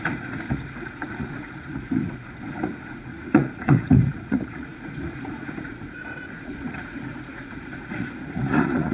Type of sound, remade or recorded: remade